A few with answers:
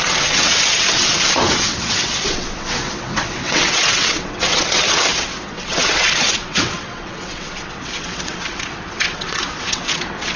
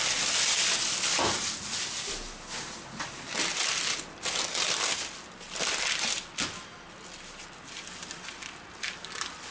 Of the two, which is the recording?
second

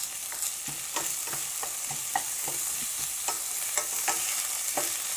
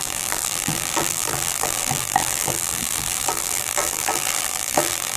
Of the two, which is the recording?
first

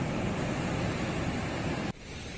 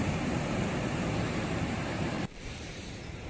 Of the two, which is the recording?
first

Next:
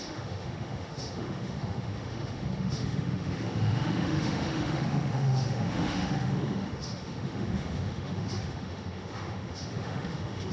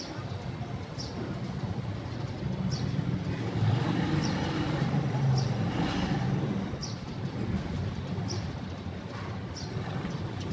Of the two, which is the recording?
second